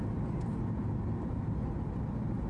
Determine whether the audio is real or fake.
real